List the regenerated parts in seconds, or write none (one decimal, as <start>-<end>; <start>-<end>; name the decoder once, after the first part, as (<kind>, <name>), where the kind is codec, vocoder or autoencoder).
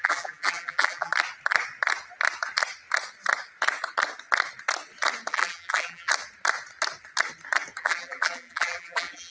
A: 0.0-1.1 (vocoder, BigVGAN v2); 5.3-6.1; 7.8-9.3